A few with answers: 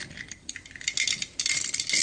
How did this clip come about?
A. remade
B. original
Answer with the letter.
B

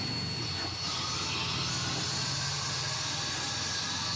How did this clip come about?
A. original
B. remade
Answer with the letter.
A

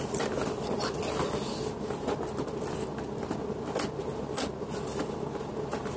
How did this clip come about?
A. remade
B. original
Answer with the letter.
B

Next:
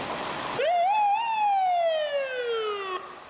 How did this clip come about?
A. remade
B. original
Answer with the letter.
B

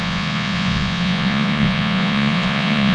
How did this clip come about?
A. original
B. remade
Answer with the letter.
B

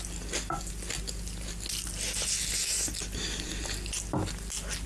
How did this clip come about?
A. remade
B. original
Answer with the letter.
B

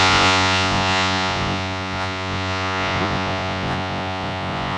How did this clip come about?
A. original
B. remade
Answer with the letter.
B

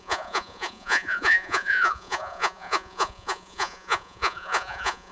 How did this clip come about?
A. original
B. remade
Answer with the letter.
B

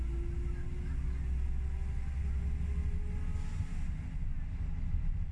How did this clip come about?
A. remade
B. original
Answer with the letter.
B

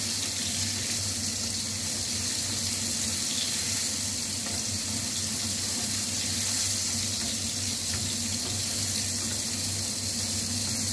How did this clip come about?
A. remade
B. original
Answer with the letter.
B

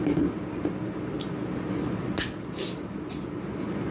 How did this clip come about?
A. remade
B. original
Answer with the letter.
B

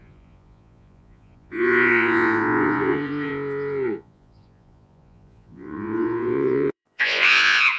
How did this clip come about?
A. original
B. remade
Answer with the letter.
B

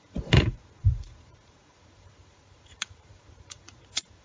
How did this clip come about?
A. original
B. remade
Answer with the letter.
B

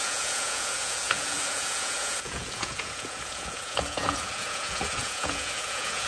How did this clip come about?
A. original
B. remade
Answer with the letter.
B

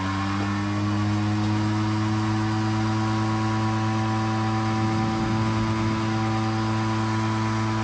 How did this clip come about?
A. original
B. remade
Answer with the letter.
A